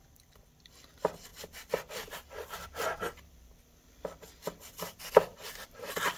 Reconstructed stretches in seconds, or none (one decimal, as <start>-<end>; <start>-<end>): 0.0-6.2